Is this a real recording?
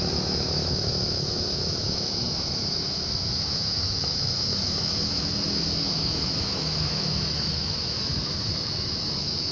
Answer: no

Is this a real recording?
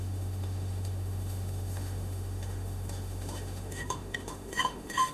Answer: no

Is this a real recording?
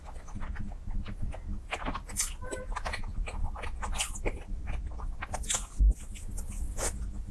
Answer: yes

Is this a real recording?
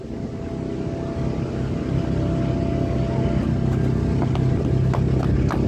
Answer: yes